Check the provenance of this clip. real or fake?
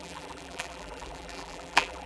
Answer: fake